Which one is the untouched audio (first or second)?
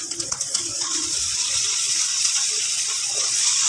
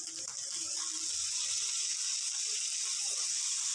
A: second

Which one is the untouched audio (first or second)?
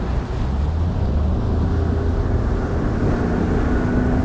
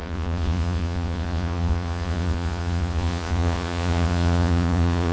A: first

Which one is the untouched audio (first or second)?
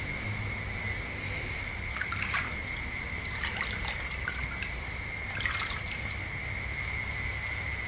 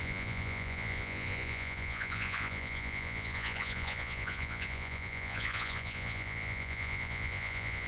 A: first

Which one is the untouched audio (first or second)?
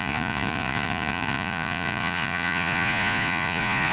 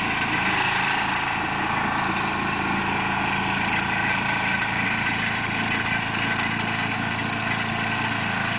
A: second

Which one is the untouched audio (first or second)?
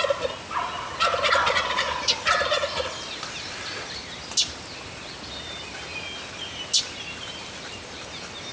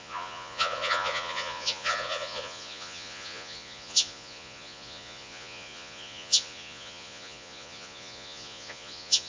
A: first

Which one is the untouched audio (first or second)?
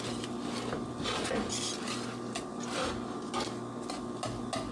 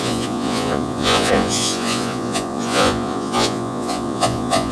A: first